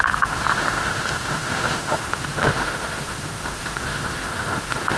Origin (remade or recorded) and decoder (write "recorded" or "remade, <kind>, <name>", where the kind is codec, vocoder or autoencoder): remade, autoencoder, DAC-VAE